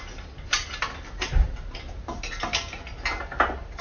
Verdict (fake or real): real